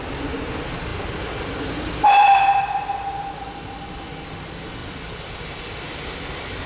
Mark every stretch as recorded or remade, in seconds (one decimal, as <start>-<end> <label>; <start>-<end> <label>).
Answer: 0.0-6.7 recorded